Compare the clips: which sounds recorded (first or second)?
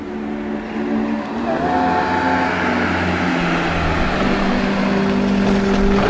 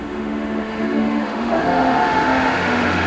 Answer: first